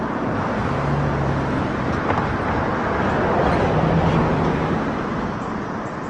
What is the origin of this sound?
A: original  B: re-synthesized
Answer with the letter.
A